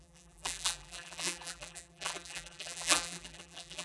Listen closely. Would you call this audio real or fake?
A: fake